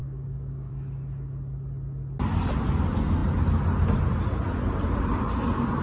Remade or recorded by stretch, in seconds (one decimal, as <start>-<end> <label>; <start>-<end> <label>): 0.0-0.7 remade; 0.7-5.8 recorded

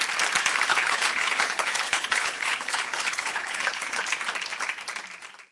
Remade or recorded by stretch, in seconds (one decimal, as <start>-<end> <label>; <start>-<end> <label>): 0.0-0.7 recorded; 0.7-4.0 remade; 4.0-5.5 recorded